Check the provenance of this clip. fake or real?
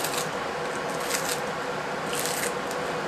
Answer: real